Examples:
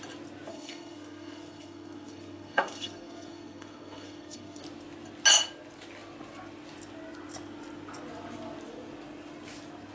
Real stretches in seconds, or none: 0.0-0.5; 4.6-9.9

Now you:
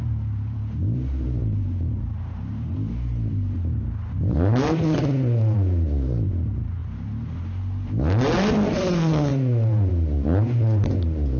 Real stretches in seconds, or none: 6.8-8.7

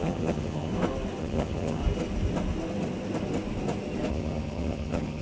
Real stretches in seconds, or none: 0.7-1.2; 1.8-4.1